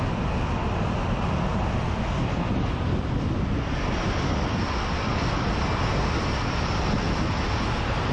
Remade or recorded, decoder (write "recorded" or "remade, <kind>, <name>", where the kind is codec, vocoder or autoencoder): recorded